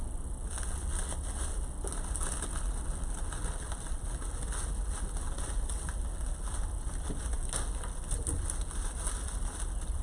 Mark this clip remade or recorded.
recorded